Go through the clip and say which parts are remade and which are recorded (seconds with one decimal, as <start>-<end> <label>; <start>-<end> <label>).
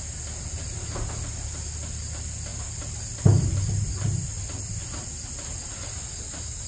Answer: 0.0-6.7 recorded